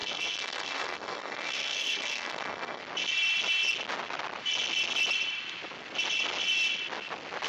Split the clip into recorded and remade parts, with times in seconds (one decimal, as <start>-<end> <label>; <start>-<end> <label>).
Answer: 0.0-2.8 remade; 2.8-7.5 recorded